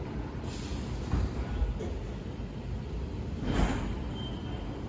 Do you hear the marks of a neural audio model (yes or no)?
no